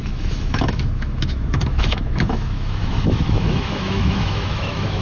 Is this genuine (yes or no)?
no